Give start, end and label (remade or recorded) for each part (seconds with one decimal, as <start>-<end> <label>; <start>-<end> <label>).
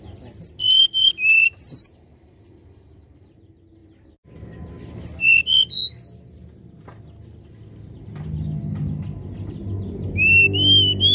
0.0-1.4 recorded; 1.4-3.3 remade; 3.3-11.1 recorded